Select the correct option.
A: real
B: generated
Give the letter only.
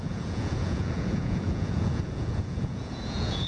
B